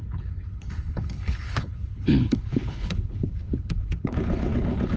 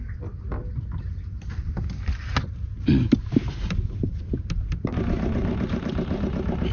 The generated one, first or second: first